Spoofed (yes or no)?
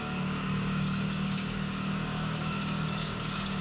yes